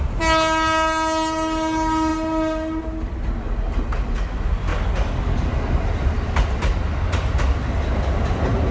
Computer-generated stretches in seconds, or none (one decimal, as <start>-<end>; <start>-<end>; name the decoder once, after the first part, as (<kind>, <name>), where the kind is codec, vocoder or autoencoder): none